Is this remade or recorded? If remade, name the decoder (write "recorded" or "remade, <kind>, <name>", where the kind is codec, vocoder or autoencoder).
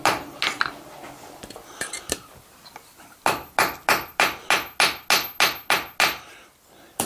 recorded